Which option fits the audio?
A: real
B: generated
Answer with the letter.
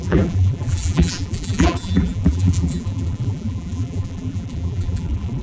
B